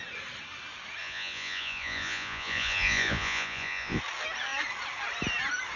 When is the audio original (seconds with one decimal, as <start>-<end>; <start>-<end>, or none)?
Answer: 0.0-1.0; 4.0-5.8